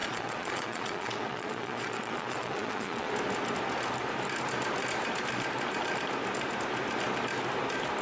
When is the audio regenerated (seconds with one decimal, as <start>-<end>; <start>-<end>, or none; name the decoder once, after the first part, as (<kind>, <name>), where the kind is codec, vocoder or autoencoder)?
0.0-3.1 (vocoder, Vocos)